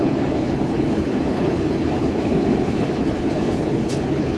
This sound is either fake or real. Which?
fake